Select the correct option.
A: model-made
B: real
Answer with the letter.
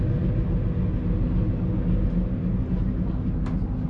B